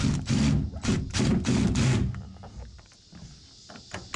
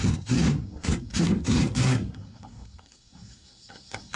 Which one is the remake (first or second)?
second